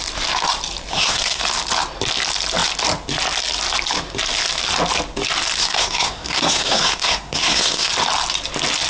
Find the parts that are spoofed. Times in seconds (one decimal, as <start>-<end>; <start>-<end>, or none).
0.9-1.4; 5.6-7.9